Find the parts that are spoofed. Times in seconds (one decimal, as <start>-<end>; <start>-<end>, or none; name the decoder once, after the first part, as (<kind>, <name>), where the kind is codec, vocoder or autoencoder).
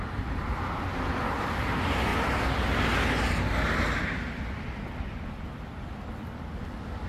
none